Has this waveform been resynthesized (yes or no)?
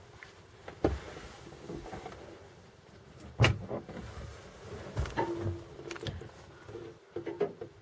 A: no